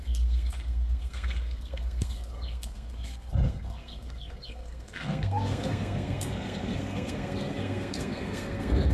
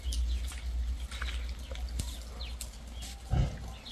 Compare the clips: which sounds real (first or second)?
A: second